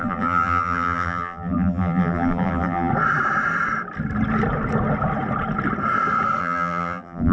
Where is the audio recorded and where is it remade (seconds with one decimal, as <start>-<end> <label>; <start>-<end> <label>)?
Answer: 0.0-2.9 remade; 2.9-6.4 recorded; 6.4-7.3 remade